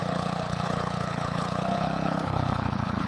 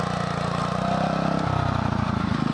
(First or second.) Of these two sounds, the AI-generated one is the first